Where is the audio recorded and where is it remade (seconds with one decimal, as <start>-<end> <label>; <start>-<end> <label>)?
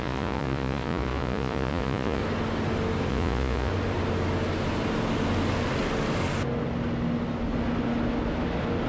0.0-2.2 remade; 2.2-3.1 recorded; 3.1-3.7 remade; 3.7-8.9 recorded